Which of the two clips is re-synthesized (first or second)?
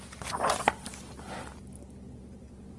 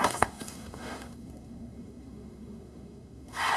second